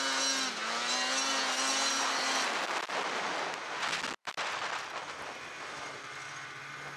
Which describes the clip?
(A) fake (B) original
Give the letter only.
B